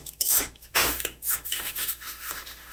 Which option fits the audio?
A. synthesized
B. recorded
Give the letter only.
A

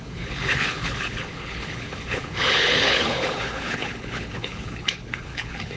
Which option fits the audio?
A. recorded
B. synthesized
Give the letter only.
B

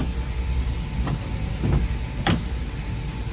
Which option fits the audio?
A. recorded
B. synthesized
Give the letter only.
A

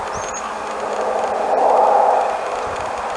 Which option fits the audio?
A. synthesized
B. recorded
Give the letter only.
B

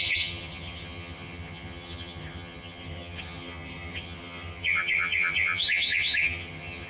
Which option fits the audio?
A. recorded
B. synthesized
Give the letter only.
B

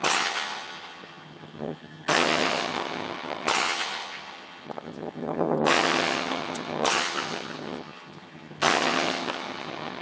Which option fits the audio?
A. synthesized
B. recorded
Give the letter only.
A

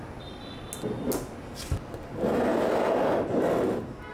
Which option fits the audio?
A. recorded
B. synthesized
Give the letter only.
A